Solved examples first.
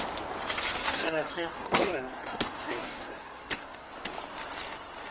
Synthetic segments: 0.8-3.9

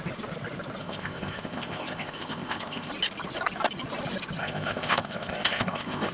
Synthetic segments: 0.8-2.9; 4.4-6.1

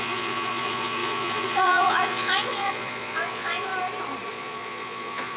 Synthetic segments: 0.0-3.7; 4.3-5.4